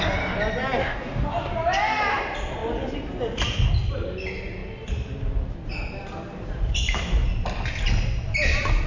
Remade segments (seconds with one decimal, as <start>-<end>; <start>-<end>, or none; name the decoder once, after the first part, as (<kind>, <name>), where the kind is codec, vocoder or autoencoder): 0.8-1.4 (codec, DAC)